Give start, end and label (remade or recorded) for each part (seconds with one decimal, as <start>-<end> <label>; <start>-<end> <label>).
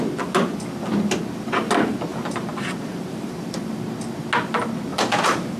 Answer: 0.0-2.1 recorded; 2.1-4.1 remade; 4.1-4.9 recorded; 4.9-5.6 remade